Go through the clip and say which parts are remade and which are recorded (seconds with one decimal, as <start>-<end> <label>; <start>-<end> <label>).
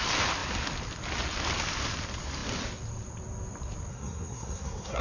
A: 0.0-3.9 recorded; 3.9-5.0 remade